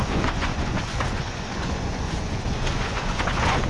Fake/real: fake